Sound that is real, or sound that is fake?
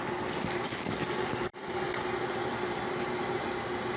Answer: real